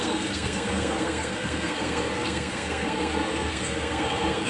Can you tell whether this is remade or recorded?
remade